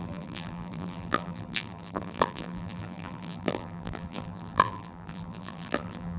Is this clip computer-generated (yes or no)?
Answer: yes